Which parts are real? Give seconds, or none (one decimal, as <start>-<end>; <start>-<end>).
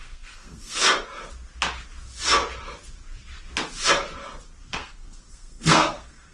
0.8-4.6